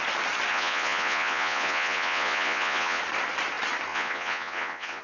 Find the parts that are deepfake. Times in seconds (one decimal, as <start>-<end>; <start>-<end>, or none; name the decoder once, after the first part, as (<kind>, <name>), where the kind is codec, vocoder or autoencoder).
0.5-3.0 (vocoder, Vocos); 3.9-5.0